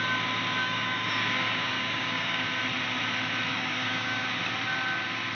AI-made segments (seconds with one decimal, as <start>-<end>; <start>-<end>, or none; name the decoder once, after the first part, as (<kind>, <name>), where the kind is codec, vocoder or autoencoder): 0.6-2.5 (codec, DAC); 3.5-4.4